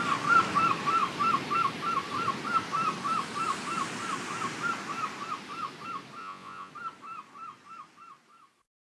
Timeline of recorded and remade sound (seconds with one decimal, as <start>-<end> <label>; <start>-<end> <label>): 0.0-6.2 recorded; 6.2-6.7 remade; 6.7-8.8 recorded